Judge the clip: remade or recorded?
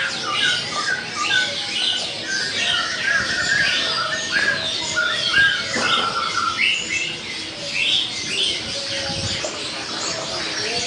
recorded